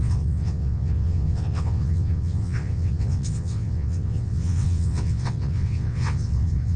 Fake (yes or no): yes